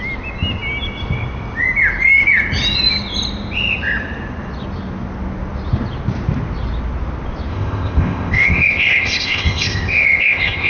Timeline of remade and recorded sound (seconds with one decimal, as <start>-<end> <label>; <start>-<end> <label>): 0.0-7.5 recorded; 7.5-10.7 remade